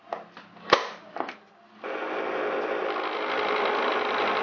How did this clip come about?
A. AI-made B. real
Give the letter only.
B